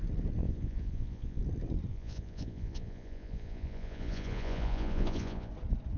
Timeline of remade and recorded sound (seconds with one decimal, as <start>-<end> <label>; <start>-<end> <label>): 0.0-0.4 recorded; 0.4-1.4 remade; 1.4-1.9 recorded; 1.9-5.5 remade; 5.5-6.0 recorded